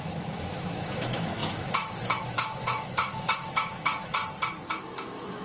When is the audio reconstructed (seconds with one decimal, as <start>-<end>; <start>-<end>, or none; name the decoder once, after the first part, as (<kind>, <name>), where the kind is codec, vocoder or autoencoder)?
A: 0.0-4.2 (autoencoder, DAC-VAE); 4.8-5.4